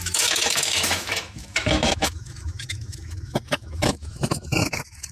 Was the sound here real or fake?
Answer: fake